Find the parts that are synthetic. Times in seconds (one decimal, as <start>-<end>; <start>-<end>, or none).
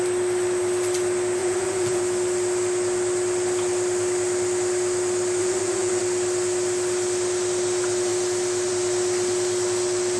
1.4-2.0; 5.4-6.0